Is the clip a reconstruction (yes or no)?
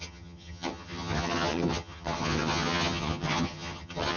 yes